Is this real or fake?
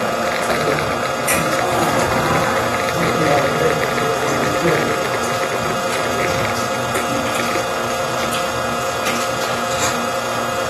real